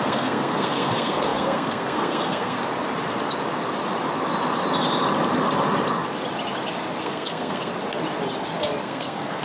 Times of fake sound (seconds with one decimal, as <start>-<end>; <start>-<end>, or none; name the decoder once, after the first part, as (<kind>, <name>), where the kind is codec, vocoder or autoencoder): 0.0-2.6 (codec, SNAC); 7.0-7.7; 8.8-9.4